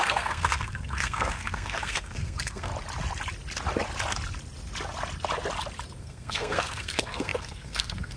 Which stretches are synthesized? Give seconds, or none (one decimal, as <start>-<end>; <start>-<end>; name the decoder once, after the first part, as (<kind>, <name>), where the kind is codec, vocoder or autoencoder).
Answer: 0.0-2.7 (codec, SNAC); 6.0-8.2